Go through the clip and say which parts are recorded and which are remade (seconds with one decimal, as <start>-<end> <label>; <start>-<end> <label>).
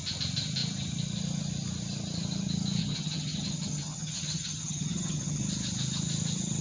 0.0-2.8 recorded; 2.8-5.4 remade; 5.4-6.6 recorded